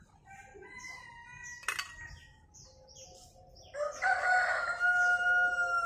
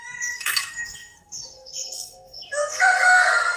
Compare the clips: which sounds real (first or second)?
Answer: first